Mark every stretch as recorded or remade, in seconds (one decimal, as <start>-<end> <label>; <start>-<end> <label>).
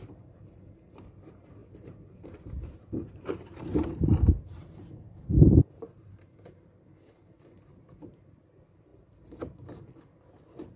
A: 0.0-10.8 remade